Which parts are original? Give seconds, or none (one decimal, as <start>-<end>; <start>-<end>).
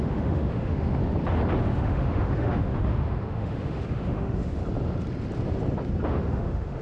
1.0-1.6; 4.6-6.1